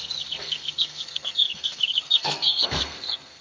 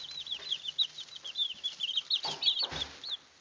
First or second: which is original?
second